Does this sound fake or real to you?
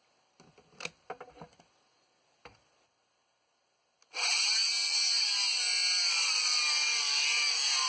real